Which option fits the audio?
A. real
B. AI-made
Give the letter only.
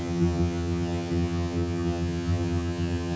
B